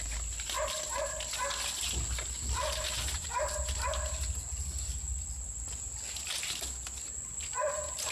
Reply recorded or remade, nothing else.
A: recorded